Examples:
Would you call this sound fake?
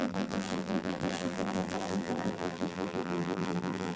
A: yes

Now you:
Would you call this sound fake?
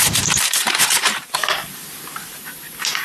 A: yes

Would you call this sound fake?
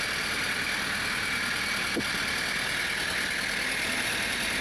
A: no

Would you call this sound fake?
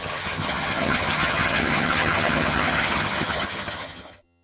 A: yes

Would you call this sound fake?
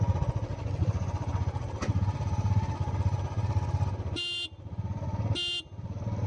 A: no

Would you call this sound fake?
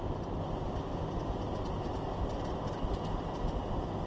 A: no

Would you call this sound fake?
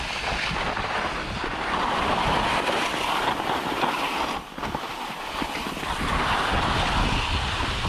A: no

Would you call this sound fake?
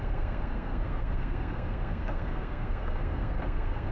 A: yes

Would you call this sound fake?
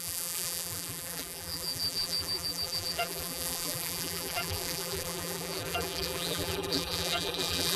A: yes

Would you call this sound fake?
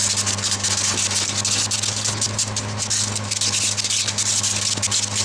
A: no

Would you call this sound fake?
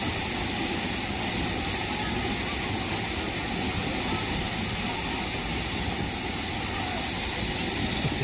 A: no